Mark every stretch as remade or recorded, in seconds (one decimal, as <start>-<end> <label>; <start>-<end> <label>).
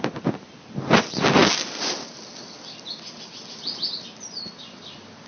0.0-5.3 recorded